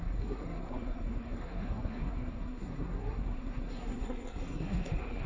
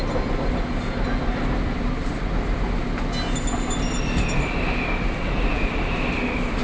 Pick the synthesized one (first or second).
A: first